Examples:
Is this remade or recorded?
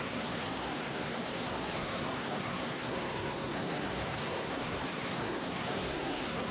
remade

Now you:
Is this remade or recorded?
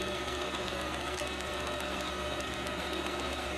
remade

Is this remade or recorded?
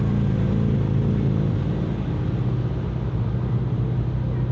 recorded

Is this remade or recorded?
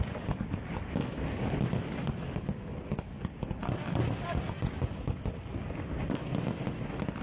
recorded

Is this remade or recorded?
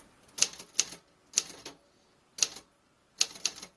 recorded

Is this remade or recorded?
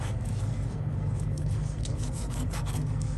remade